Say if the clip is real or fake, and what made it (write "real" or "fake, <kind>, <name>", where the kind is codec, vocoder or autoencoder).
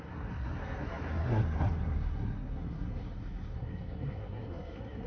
fake, codec, SNAC